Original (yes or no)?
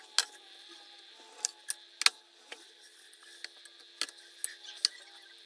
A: yes